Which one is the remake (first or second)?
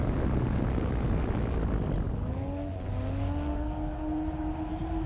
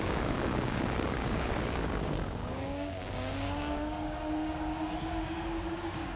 second